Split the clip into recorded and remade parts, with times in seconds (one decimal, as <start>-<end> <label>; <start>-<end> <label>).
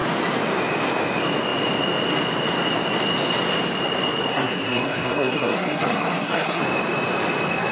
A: 0.0-4.3 recorded; 4.3-6.6 remade; 6.6-7.7 recorded